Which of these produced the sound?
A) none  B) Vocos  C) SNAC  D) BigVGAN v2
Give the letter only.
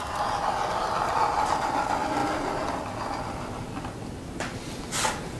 A